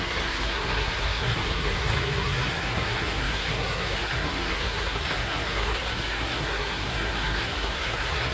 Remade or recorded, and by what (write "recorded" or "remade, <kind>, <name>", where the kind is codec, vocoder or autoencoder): remade, codec, SNAC